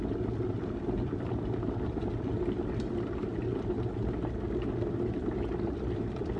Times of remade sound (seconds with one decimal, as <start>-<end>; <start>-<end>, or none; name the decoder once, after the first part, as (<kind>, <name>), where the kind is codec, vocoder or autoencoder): 0.0-3.3 (vocoder, BigVGAN v2); 5.2-6.4